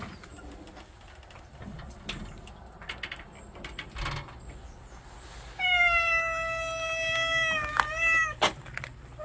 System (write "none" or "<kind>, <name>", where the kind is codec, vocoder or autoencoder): none